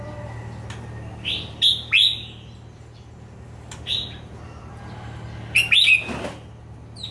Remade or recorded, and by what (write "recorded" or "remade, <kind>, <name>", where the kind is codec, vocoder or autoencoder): recorded